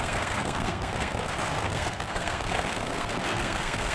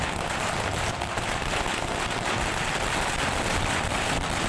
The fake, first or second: first